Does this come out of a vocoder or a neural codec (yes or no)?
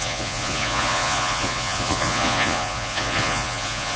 yes